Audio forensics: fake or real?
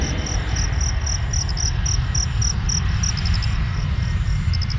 real